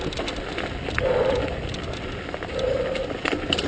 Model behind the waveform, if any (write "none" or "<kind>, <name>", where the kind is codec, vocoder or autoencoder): none